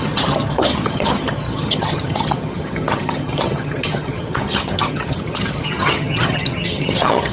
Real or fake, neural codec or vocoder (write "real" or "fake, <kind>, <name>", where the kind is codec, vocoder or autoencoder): fake, vocoder, HiFi-GAN